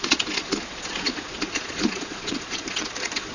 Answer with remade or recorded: remade